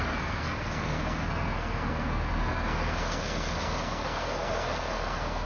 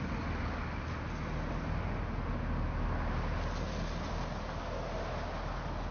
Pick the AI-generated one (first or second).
first